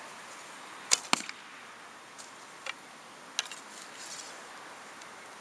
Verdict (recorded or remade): recorded